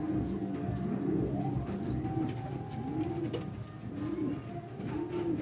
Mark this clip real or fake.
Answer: real